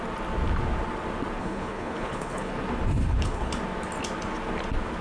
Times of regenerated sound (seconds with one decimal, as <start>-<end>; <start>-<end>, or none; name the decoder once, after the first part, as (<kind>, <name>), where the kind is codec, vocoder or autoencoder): 1.4-2.5 (codec, HILCodec); 3.0-3.5